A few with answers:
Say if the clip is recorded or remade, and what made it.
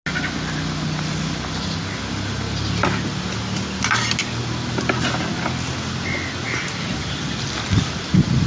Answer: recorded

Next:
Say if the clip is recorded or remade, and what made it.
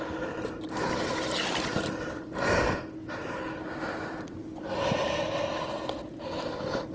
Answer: recorded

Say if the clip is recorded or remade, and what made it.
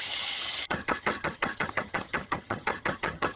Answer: remade, vocoder, HiFi-GAN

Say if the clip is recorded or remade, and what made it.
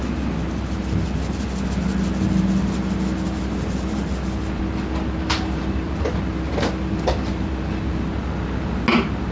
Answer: recorded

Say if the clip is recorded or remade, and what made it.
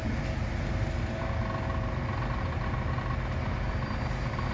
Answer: recorded